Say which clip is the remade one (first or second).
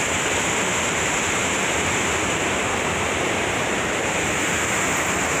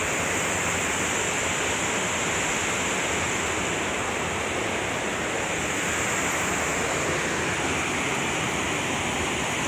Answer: first